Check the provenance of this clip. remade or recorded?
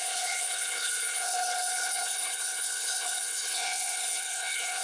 remade